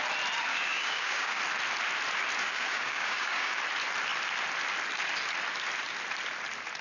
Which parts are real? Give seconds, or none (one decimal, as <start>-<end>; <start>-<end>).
0.0-0.5; 1.4-2.4; 3.6-6.8